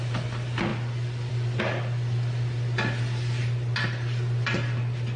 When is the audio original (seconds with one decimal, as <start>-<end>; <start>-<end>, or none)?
0.0-5.2